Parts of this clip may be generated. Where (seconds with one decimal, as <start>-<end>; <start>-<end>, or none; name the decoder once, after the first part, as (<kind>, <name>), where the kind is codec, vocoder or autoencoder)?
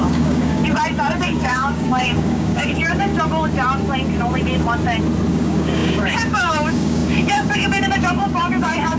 0.0-0.6 (codec, DAC); 1.2-3.1; 5.3-9.0